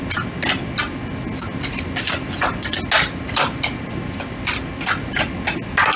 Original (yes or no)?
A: yes